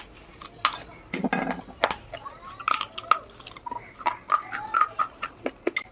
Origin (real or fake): real